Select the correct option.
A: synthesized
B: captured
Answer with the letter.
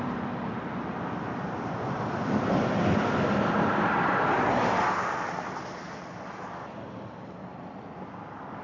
B